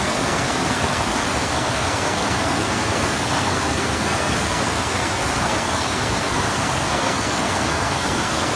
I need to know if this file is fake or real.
fake